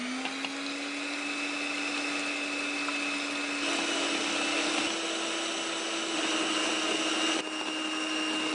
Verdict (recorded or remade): recorded